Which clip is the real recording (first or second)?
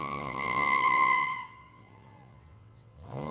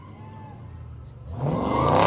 second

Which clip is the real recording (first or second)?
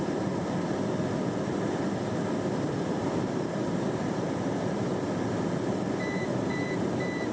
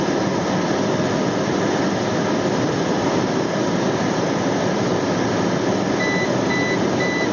second